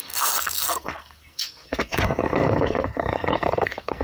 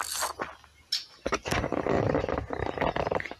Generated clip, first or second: first